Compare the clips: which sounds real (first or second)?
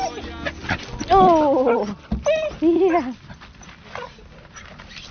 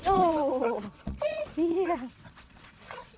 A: first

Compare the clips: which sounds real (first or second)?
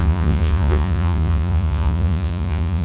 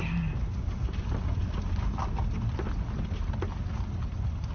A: second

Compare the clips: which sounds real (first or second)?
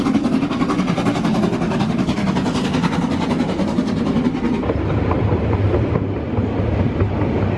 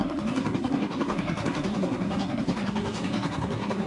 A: first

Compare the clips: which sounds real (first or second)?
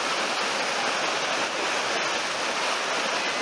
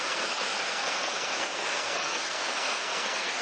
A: first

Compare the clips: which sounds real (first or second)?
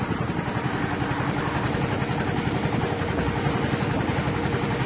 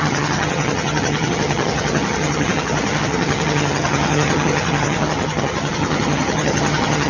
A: first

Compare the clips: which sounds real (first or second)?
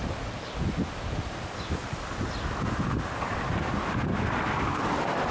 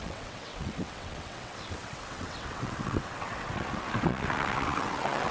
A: first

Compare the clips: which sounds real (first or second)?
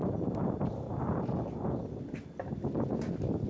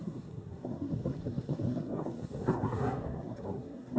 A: first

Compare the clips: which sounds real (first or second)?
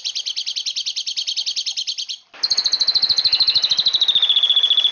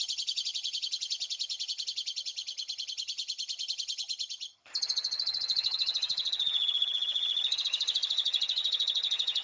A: first